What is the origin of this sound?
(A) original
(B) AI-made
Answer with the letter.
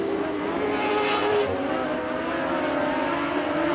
A